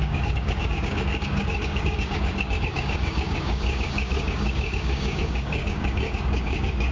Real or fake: fake